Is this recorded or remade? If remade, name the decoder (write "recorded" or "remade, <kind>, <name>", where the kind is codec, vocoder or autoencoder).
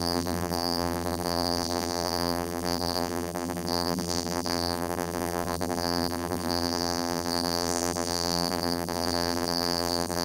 remade, vocoder, BigVGAN v2